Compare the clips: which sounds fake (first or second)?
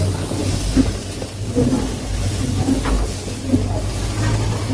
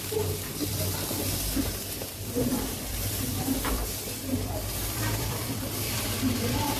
second